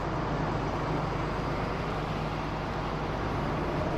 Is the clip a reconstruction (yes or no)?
no